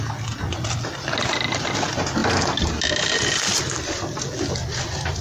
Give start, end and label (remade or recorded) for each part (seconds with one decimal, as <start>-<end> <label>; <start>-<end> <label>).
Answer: 0.0-5.2 recorded